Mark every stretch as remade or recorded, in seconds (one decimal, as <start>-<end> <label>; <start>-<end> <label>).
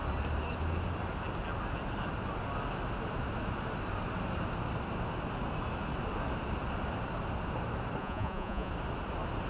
0.0-8.0 recorded; 8.0-8.7 remade; 8.7-9.5 recorded